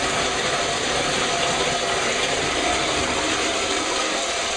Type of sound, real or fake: real